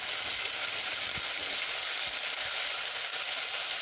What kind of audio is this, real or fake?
real